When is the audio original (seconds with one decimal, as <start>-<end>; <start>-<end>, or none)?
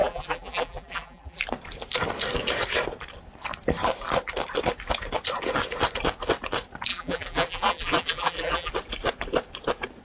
1.4-6.9; 8.7-10.0